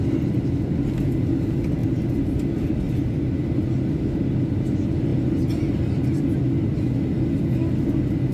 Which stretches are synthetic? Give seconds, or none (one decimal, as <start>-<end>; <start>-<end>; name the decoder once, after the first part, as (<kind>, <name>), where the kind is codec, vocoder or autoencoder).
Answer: none